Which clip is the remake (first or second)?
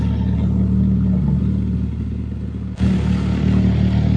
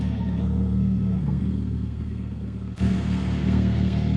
second